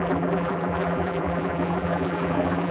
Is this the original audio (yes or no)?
no